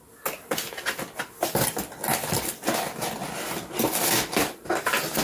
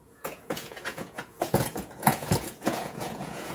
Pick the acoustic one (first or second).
first